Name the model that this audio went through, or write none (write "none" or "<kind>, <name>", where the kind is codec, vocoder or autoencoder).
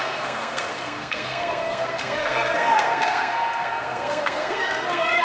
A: codec, SNAC